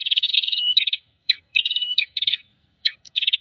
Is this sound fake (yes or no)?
yes